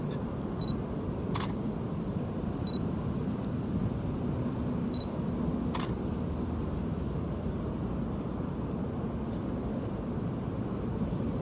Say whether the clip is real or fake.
fake